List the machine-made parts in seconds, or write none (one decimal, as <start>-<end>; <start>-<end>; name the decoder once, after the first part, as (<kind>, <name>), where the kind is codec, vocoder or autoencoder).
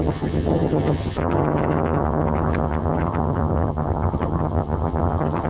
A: 0.0-5.5 (vocoder, HiFi-GAN)